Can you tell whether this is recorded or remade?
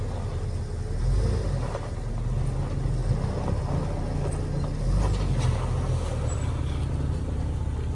recorded